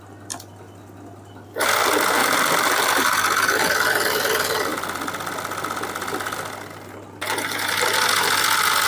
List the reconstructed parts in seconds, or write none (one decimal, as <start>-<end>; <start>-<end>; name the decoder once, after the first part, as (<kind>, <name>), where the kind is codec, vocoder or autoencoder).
2.2-3.0 (vocoder, BigVGAN v2); 4.7-5.3